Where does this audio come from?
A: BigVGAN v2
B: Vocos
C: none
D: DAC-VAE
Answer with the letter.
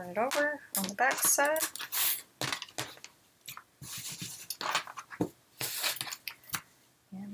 C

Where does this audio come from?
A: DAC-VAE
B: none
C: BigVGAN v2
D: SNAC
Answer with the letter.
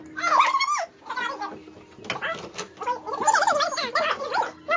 B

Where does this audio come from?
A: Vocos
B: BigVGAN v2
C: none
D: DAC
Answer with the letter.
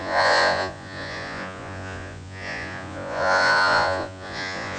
A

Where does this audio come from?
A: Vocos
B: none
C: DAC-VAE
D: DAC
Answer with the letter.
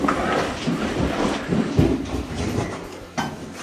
B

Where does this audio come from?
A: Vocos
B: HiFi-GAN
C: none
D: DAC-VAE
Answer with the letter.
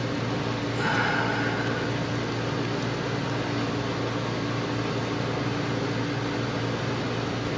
C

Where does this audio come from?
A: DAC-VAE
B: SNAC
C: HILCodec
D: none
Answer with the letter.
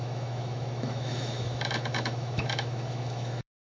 A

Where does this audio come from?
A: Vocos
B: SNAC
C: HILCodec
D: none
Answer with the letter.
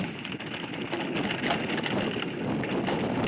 D